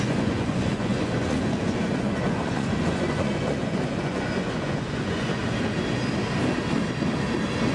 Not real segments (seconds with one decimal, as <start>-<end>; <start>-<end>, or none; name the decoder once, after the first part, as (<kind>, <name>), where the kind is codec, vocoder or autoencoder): 0.0-5.4 (vocoder, Vocos)